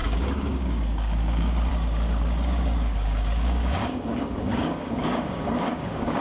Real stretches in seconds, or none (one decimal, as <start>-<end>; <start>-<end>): none